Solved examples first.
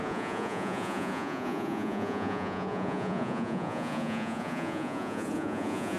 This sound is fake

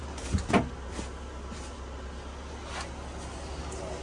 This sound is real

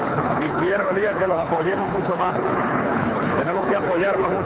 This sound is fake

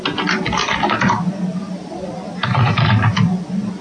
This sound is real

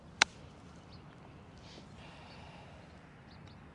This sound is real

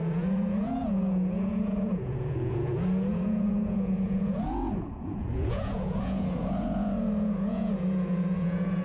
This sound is fake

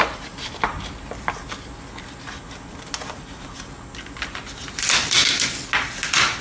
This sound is real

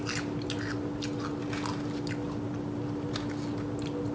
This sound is real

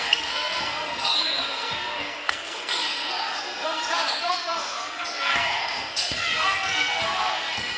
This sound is fake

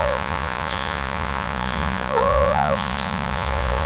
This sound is fake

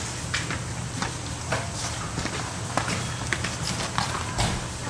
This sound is real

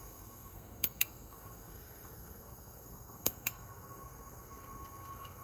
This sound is fake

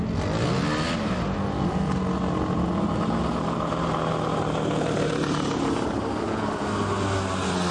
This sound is real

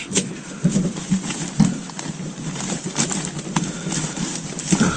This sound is real